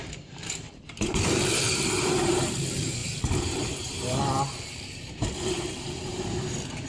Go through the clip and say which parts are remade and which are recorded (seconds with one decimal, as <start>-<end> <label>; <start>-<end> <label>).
0.0-6.9 remade